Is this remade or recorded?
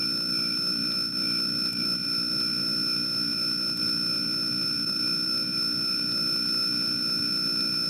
recorded